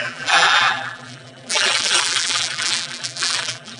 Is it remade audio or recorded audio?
remade